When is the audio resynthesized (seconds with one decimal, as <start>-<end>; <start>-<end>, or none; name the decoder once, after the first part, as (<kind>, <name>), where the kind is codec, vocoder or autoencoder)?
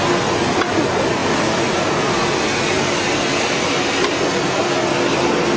none